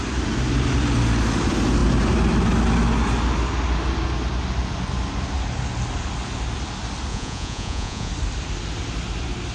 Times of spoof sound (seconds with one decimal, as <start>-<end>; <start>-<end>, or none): 7.1-8.1